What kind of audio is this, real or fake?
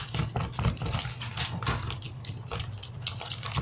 real